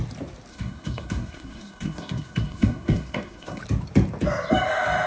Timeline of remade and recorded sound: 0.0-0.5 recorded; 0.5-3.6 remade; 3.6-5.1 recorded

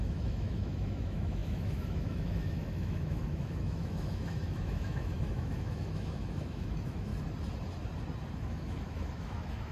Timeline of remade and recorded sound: 0.0-7.1 remade; 7.1-8.3 recorded; 8.3-9.7 remade

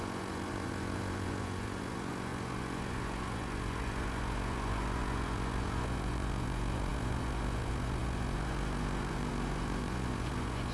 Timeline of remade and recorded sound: 0.0-10.7 remade

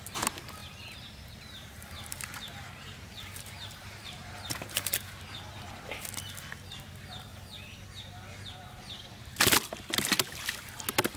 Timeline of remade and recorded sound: 0.0-0.6 recorded; 0.6-5.4 remade; 5.4-11.2 recorded

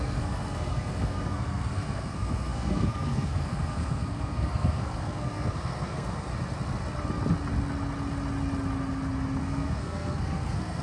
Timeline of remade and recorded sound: 0.0-6.3 remade; 6.3-9.4 recorded; 9.4-10.8 remade